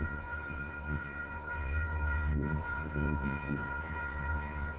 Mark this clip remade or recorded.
remade